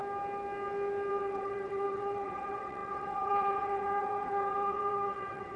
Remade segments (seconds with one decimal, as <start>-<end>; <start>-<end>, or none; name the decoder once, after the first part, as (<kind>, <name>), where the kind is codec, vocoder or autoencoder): 1.1-5.6 (vocoder, WaveNeXt)